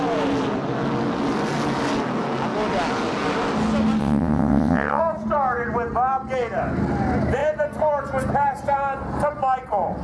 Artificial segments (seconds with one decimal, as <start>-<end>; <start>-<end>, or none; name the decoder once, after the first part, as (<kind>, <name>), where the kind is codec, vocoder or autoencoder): 4.0-5.0 (vocoder, WaveNeXt)